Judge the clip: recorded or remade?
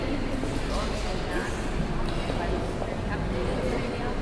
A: recorded